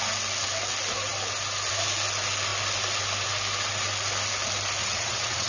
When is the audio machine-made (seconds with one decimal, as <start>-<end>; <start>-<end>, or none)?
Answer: 4.8-5.5